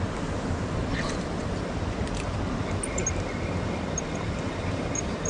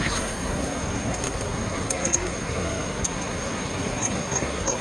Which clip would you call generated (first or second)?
second